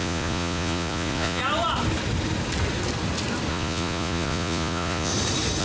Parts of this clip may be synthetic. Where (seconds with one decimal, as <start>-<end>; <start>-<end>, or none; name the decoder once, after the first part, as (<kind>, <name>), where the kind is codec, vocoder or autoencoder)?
0.0-1.4 (vocoder, Vocos); 3.5-5.1